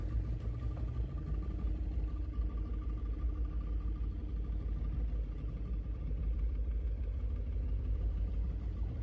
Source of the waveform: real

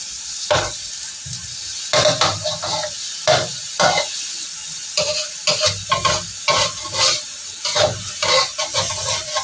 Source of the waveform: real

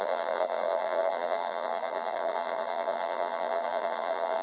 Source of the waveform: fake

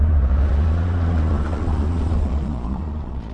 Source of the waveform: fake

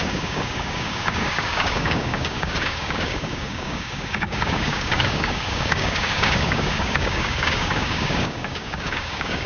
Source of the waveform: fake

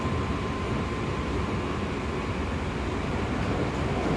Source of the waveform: real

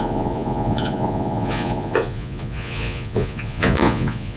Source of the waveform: fake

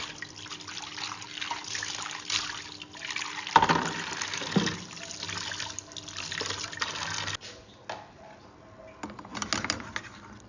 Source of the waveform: real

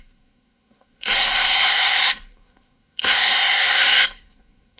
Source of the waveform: fake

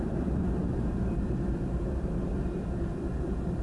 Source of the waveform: real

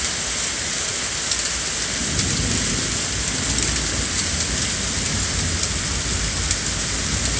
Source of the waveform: real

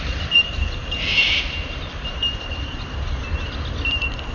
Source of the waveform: real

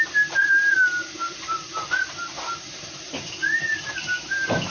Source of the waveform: real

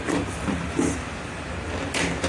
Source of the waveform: real